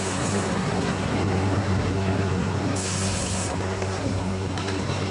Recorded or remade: remade